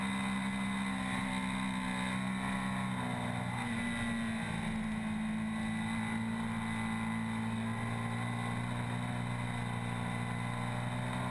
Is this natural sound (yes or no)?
yes